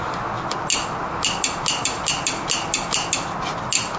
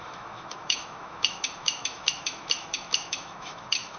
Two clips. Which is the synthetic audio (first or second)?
second